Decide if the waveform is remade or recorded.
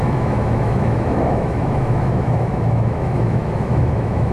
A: remade